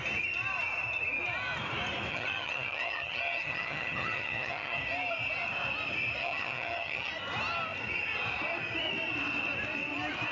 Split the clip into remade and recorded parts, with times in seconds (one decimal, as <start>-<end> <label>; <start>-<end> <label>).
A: 0.0-2.1 recorded; 2.1-4.8 remade; 4.8-6.2 recorded; 6.2-7.1 remade; 7.1-10.3 recorded